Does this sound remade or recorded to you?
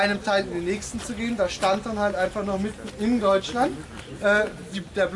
recorded